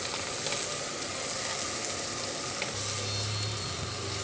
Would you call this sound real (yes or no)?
yes